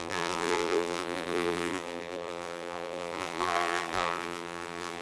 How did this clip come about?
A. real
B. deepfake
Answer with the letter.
B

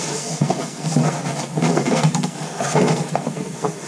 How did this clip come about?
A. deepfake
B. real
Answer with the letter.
A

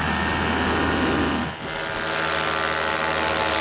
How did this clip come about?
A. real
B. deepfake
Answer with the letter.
A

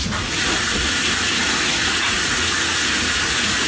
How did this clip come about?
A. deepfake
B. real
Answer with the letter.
A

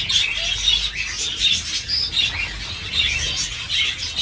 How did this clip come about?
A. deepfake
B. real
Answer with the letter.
B